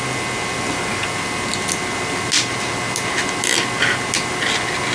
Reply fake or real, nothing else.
real